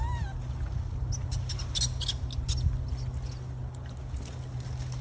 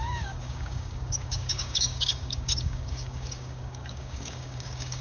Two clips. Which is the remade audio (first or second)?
second